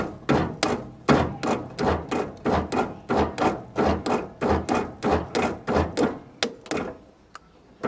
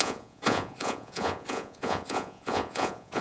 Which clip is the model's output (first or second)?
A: second